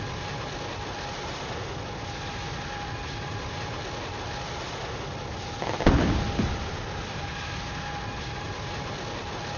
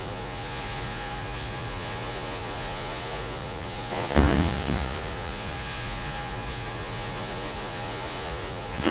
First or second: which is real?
first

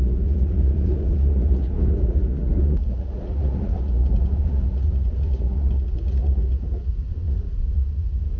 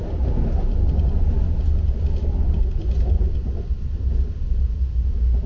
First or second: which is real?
second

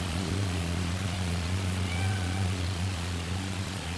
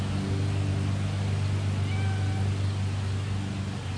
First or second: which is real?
second